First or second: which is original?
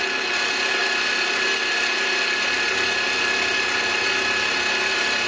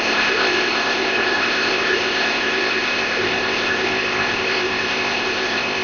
first